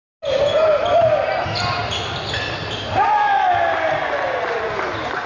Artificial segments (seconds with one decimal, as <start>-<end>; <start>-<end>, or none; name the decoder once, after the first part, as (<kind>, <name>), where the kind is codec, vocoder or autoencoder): none